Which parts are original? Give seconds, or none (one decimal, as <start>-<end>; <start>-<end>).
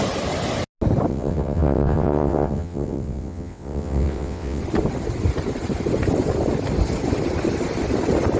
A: 0.0-1.1; 4.6-8.4